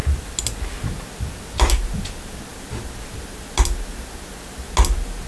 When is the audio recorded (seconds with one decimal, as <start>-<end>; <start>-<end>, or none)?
0.0-5.3